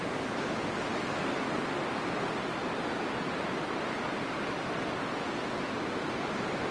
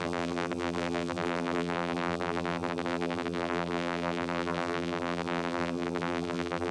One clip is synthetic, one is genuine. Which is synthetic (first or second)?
second